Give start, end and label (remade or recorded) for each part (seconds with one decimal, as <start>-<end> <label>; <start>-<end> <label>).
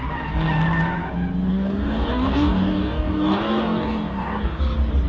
0.0-1.5 recorded; 1.5-4.6 remade; 4.6-5.1 recorded